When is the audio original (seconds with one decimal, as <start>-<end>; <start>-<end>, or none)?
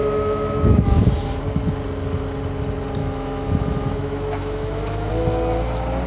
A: 1.0-3.0; 5.1-6.1